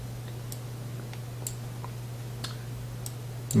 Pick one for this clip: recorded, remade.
recorded